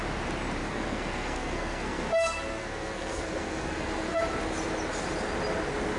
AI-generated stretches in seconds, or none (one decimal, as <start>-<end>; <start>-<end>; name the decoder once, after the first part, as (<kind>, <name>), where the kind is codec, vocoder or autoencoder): 0.6-4.2 (codec, SNAC)